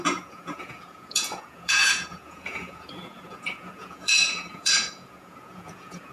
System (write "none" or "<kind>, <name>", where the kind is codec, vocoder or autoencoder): vocoder, Vocos